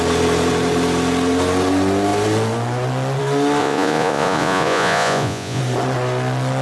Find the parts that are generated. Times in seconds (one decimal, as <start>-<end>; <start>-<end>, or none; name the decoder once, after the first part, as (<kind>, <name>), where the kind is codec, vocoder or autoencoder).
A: 3.6-5.6 (vocoder, Vocos)